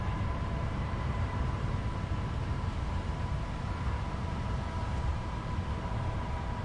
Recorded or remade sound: remade